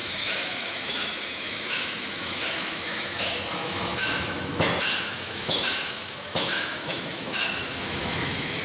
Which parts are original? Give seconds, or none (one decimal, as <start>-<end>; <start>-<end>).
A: none